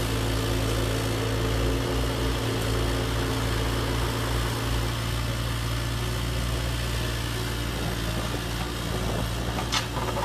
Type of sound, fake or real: real